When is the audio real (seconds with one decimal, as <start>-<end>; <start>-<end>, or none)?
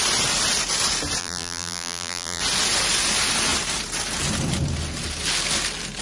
0.0-1.2; 2.4-6.0